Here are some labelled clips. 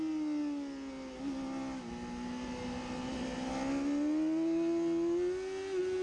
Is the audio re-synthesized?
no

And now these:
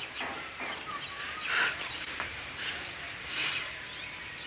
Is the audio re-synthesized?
no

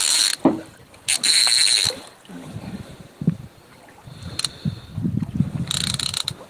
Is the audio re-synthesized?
no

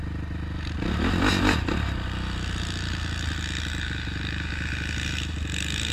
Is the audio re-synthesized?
no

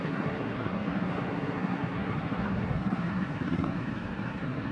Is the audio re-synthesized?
yes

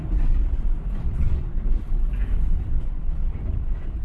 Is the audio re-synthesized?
no